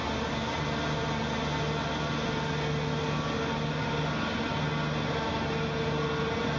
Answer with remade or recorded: recorded